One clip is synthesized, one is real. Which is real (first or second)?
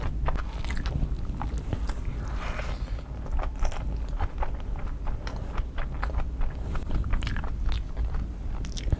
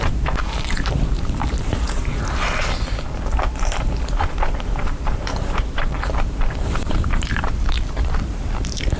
first